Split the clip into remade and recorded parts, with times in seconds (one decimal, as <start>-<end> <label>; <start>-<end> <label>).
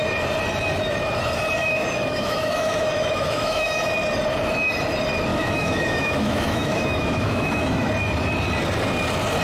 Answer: 0.0-1.6 recorded; 1.6-3.9 remade; 3.9-5.3 recorded; 5.3-7.9 remade; 7.9-9.4 recorded